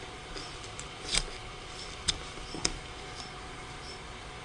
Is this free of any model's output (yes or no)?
no